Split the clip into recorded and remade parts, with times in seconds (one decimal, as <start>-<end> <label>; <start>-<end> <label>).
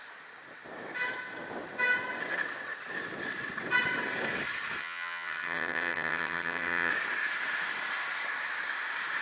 0.0-4.8 recorded; 4.8-6.9 remade; 6.9-9.2 recorded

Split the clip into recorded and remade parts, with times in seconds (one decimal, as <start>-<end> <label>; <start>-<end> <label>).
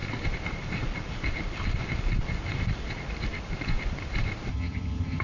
0.0-4.5 recorded; 4.5-5.2 remade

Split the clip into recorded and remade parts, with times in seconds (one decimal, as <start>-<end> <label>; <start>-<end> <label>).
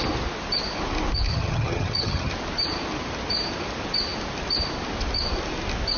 0.0-1.3 recorded; 1.3-2.3 remade; 2.3-6.0 recorded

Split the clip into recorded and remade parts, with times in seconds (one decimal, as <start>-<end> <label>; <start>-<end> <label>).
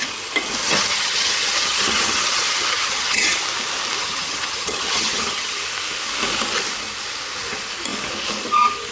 0.0-0.6 recorded; 0.6-3.4 remade; 3.4-4.0 recorded; 4.0-5.6 remade; 5.6-8.9 recorded